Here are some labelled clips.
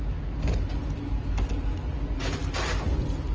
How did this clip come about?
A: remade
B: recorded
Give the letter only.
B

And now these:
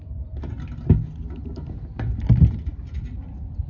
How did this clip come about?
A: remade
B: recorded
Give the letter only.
B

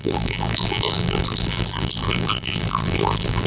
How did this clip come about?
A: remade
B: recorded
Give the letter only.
A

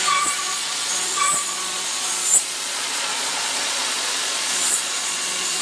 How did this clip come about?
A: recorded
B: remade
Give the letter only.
B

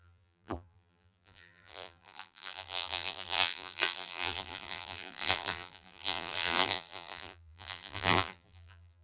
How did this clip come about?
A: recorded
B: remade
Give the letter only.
B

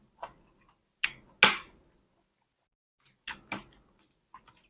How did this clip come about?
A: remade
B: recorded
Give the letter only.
B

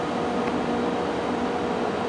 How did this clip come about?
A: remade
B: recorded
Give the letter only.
B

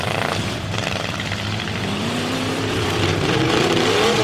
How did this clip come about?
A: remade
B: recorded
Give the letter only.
A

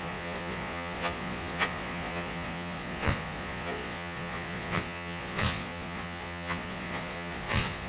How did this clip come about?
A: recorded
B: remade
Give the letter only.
B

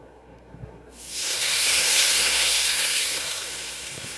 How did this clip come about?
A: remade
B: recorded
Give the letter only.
A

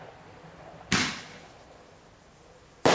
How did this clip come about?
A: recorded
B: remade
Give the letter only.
A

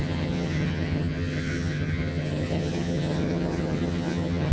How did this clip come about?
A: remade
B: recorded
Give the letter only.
A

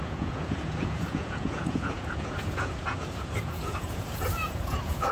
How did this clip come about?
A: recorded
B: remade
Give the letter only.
B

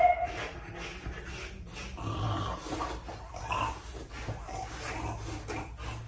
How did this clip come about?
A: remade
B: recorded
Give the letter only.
B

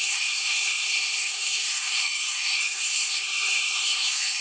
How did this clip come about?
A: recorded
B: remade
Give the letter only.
B